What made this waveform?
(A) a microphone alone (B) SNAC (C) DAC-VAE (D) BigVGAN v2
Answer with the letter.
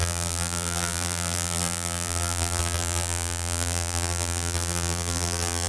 D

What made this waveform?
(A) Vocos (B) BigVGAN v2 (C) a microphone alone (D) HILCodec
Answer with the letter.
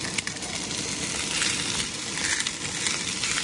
C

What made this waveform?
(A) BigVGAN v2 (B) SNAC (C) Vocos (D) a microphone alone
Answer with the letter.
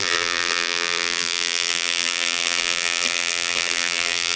A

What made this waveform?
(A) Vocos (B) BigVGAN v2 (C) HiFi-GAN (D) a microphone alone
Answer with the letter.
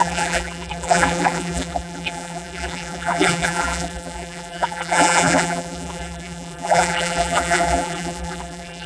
B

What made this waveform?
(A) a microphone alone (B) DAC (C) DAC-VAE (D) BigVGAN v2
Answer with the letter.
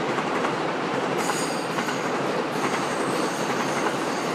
D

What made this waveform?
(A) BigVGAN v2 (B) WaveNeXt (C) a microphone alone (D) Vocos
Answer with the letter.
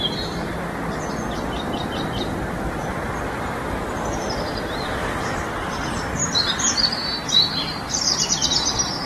C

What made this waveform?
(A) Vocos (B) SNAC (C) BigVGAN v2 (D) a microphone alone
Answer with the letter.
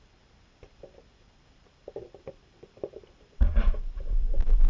C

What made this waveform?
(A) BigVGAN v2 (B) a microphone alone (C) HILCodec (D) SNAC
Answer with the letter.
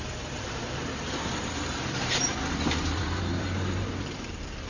A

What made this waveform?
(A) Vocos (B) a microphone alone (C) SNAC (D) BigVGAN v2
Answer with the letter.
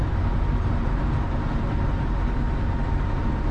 D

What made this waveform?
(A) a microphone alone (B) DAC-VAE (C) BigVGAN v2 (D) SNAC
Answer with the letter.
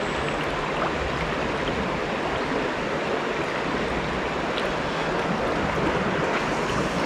A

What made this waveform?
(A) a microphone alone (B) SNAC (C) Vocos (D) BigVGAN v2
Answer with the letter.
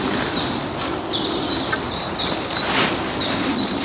D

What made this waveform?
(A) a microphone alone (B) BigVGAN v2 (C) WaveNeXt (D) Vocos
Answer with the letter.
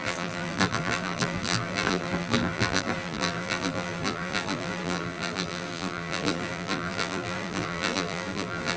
B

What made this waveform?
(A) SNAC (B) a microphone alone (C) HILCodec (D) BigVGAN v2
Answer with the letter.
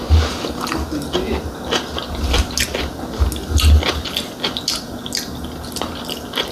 B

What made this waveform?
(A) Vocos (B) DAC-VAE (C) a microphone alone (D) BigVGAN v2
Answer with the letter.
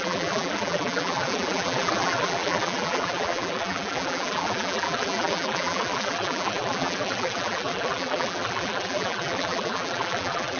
D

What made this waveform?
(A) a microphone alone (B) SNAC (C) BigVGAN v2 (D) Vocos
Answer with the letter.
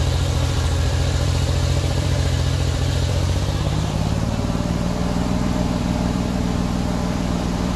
C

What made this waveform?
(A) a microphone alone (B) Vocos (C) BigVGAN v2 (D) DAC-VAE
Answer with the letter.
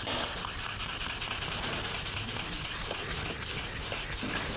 A